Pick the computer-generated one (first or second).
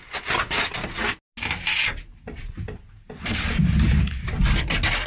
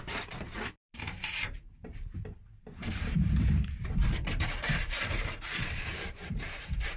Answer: second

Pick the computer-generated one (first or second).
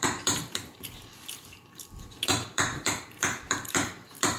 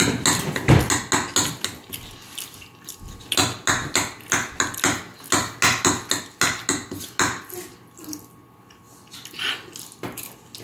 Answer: first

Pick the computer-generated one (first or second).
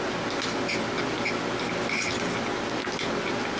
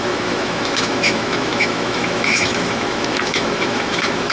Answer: second